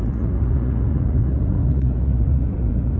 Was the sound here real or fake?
fake